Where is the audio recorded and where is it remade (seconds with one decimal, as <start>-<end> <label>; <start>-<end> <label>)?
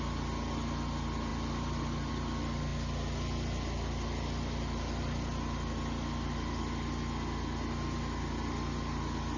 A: 0.0-9.4 recorded